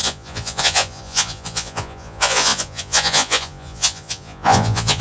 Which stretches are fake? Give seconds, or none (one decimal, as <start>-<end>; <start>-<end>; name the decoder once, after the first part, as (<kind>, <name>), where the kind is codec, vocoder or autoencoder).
0.0-5.0 (vocoder, Vocos)